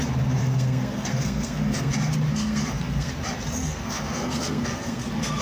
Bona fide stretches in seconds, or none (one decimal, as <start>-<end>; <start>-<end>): 0.0-0.4; 1.9-2.3; 3.1-3.6